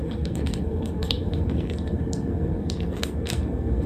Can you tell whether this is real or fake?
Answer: fake